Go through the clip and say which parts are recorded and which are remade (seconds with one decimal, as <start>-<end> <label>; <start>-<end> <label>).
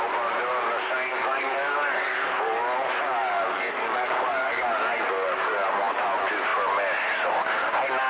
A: 0.0-1.1 recorded; 1.1-6.0 remade; 6.0-8.1 recorded